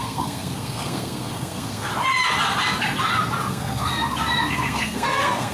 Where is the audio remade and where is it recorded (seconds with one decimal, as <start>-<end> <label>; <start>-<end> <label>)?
0.0-1.9 remade; 1.9-3.5 recorded; 3.5-3.9 remade; 3.9-4.5 recorded; 4.5-5.5 remade